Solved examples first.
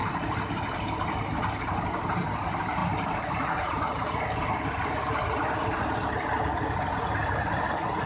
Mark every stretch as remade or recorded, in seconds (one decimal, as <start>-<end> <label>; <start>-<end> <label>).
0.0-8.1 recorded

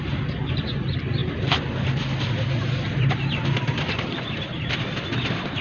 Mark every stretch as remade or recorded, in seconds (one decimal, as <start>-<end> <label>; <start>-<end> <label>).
0.0-5.6 recorded

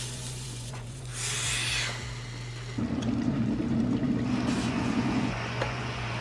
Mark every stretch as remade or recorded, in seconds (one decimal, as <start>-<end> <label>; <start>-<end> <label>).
0.0-1.1 remade; 1.1-4.7 recorded; 4.7-6.2 remade

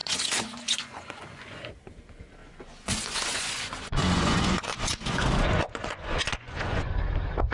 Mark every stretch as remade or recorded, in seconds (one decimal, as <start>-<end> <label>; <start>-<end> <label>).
0.0-1.7 remade; 1.7-2.4 recorded; 2.4-6.9 remade; 6.9-7.5 recorded

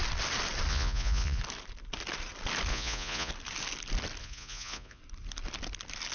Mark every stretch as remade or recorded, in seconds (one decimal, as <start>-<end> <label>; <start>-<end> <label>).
0.0-0.7 recorded; 0.7-1.4 remade; 1.4-2.7 recorded; 2.7-3.3 remade; 3.3-4.2 recorded; 4.2-5.0 remade; 5.0-6.1 recorded

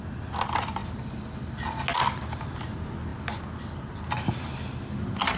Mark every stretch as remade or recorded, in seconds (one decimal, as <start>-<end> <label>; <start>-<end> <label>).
0.0-5.4 recorded

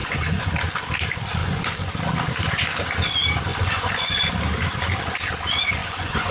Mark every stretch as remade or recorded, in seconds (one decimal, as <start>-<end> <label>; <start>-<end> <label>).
0.0-0.5 remade; 0.5-1.4 recorded; 1.4-1.9 remade; 1.9-3.5 recorded; 3.5-4.3 remade; 4.3-5.8 recorded; 5.8-6.3 remade